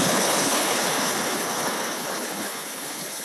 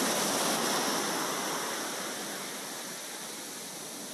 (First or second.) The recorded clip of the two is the second